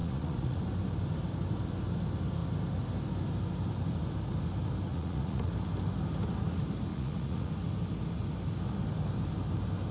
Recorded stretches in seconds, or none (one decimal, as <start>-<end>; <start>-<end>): 0.6-4.9; 5.5-6.9; 7.5-9.9